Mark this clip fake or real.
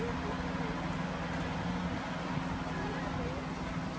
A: real